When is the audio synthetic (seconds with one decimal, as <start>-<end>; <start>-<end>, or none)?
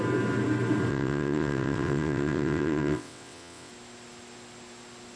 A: 0.9-3.7